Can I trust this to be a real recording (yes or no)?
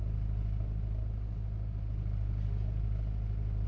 yes